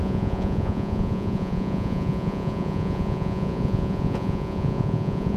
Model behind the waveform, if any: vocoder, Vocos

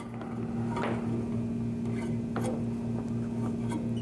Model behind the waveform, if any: none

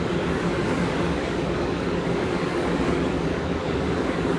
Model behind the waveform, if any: codec, DAC